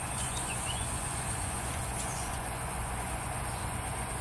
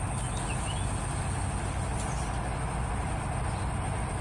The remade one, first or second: first